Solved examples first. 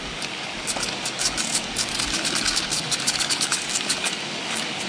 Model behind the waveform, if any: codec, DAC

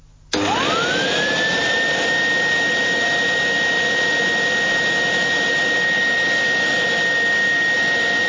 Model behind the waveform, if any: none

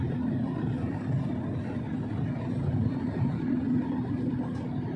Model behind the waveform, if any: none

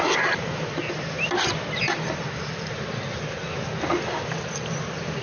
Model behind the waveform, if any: none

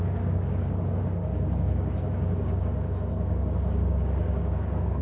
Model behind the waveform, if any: codec, DAC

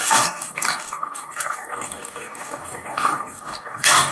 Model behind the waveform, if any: codec, DAC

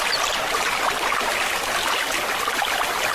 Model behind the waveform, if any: none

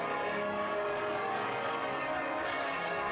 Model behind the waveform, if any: codec, DAC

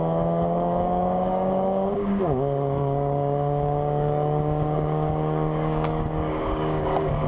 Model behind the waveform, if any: codec, DAC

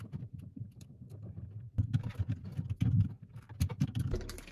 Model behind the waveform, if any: none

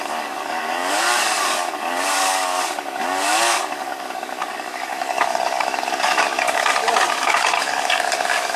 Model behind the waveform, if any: codec, DAC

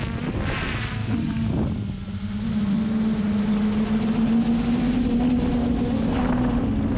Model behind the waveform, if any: none